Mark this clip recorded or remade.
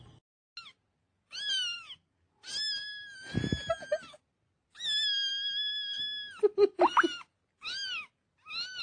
recorded